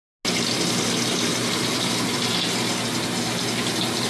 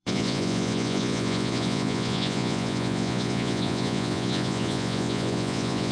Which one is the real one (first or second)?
first